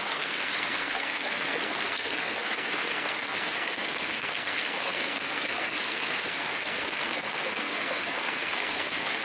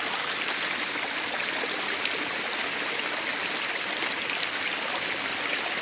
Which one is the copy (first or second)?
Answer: first